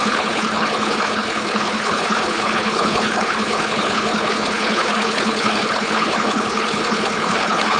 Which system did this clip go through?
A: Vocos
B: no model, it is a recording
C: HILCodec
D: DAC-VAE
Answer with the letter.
C